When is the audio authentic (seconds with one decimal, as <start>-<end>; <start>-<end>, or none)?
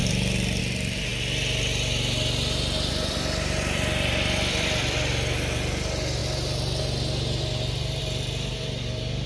1.1-2.9; 6.2-8.0